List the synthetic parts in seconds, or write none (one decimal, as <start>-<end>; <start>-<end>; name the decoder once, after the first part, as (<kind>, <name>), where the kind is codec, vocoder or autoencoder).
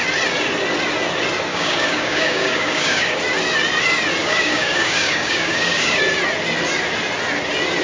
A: 1.5-3.2 (codec, DAC); 4.2-6.0